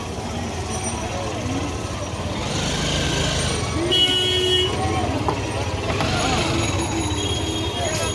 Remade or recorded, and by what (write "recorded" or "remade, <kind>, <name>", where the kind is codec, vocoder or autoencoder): recorded